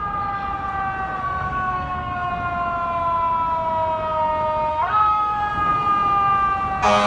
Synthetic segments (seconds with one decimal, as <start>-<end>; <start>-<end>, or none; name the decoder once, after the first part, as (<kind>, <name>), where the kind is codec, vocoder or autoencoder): 1.2-2.3 (codec, SNAC); 4.7-5.4

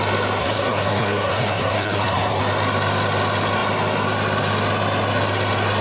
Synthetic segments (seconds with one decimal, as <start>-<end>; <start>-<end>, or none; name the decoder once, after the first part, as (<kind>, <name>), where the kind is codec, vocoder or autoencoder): 0.4-2.4 (codec, SNAC)

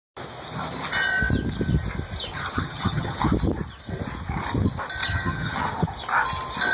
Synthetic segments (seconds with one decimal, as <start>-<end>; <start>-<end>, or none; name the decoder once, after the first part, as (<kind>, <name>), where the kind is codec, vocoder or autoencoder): 2.3-3.2 (vocoder, HiFi-GAN); 5.0-5.8

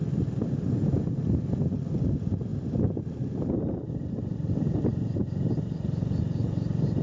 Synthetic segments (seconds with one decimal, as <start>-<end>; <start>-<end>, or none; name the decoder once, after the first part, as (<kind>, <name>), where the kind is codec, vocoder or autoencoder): none

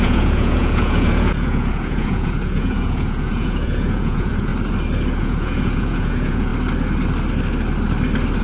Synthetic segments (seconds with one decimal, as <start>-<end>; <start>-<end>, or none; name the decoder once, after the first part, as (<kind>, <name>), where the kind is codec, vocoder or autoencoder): 0.0-4.5 (vocoder, Vocos); 5.2-6.5

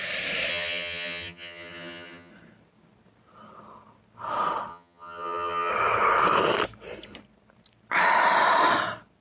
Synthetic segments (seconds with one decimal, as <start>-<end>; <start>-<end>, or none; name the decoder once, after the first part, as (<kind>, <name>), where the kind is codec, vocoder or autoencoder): 0.5-2.3 (vocoder, HiFi-GAN); 4.7-5.7

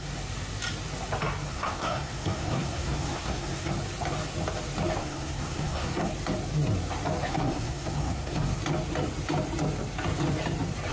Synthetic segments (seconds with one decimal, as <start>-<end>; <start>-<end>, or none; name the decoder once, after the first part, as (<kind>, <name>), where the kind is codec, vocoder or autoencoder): 1.5-3.7 (codec, SNAC); 5.0-6.1; 7.3-8.6

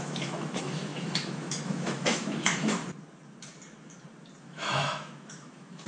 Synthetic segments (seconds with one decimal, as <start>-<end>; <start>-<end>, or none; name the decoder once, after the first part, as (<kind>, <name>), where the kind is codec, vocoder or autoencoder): 0.0-2.8 (autoencoder, DAC-VAE); 4.4-5.9